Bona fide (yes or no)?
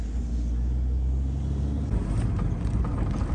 yes